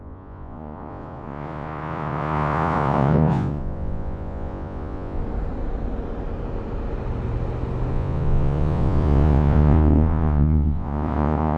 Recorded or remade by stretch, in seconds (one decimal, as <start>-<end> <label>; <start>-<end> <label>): 0.0-5.2 remade; 5.2-7.9 recorded; 7.9-11.6 remade